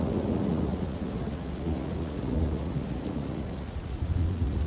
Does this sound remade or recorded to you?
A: remade